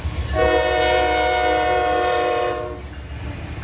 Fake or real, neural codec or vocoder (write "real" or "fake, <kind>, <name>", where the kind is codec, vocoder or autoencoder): real